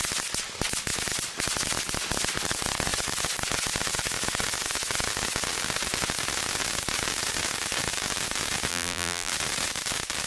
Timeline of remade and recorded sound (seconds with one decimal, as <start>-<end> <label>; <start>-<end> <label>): 0.0-8.7 recorded; 8.7-9.3 remade; 9.3-10.3 recorded